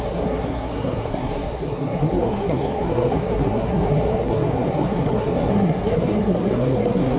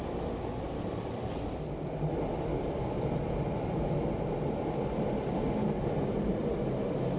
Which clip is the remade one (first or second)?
first